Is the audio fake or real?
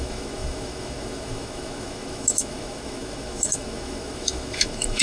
fake